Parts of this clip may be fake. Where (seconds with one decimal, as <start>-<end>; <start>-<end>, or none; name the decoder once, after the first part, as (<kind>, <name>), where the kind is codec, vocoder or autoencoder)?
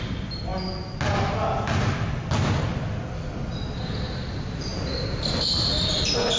0.0-0.5 (vocoder, BigVGAN v2); 4.3-4.7; 5.2-6.4